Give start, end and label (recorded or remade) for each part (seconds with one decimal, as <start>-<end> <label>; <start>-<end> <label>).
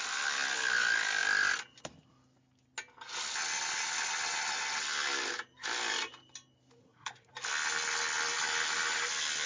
0.0-6.8 recorded; 6.8-7.3 remade; 7.3-9.5 recorded